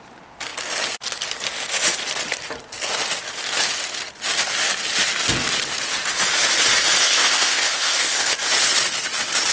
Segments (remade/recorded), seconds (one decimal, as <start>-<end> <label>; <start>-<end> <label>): 0.0-7.0 recorded; 7.0-8.5 remade; 8.5-9.5 recorded